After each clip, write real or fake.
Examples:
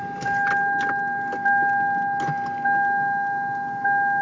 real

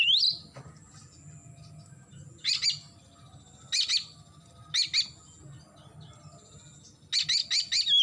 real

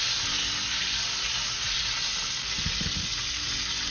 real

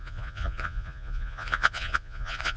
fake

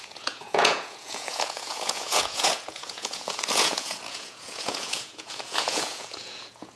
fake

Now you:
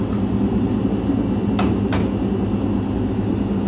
real